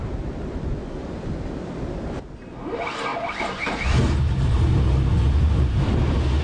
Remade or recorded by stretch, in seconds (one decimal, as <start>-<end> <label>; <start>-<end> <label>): 0.0-6.4 recorded